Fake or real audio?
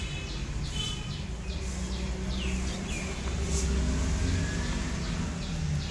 real